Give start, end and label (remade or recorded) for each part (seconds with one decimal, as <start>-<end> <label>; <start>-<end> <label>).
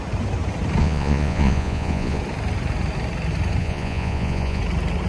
0.0-0.8 recorded; 0.8-2.2 remade; 2.2-3.6 recorded; 3.6-4.6 remade; 4.6-5.1 recorded